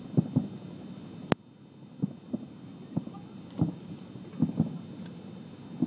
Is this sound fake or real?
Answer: real